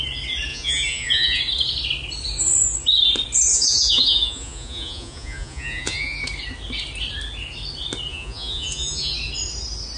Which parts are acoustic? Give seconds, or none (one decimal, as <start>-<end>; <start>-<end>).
0.0-0.5; 1.4-3.5; 6.2-8.1; 9.1-10.0